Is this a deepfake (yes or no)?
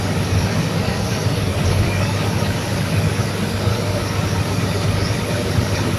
yes